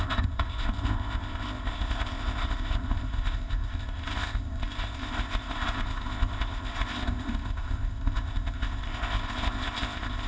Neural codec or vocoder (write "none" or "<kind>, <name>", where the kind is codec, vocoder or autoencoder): codec, ZipCodec